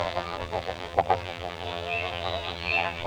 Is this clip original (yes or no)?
no